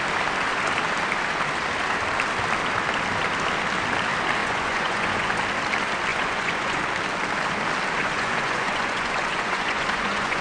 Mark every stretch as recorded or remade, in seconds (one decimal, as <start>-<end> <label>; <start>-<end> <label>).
0.0-4.4 recorded; 4.4-5.4 remade; 5.4-6.1 recorded; 6.1-6.8 remade; 6.8-8.0 recorded; 8.0-10.4 remade